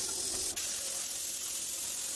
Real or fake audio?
real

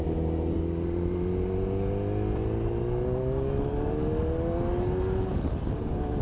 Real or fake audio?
real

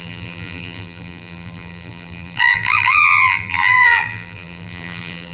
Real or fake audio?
fake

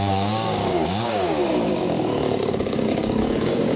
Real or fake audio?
fake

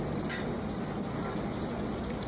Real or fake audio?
fake